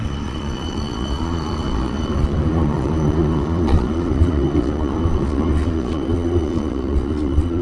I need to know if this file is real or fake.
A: fake